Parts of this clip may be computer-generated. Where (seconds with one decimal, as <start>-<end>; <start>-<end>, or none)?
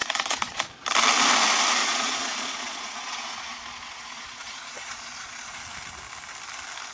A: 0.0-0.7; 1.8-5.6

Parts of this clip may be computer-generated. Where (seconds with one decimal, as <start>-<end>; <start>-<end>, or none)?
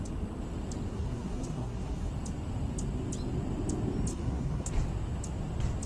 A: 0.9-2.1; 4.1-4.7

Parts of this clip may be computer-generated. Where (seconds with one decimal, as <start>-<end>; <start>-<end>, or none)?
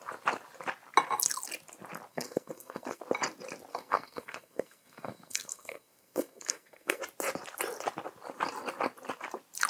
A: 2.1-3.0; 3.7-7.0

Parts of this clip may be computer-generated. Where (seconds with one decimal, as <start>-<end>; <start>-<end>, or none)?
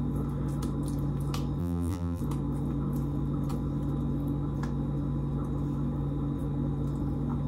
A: 1.6-2.2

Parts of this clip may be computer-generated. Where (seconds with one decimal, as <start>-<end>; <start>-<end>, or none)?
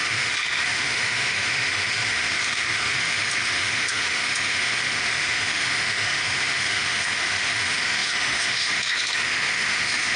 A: 0.0-10.2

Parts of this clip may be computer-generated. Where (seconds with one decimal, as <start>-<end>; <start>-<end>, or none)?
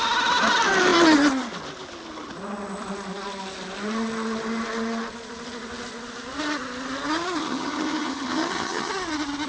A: 7.4-8.9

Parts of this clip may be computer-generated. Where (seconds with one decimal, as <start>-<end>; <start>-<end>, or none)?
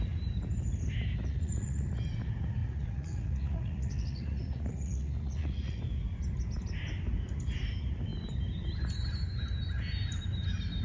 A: 1.2-1.9; 2.6-5.8